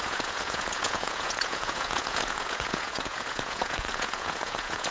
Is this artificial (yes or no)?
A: yes